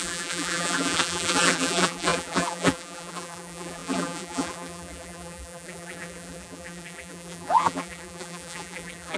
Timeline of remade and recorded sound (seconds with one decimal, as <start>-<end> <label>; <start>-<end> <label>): 0.0-9.2 remade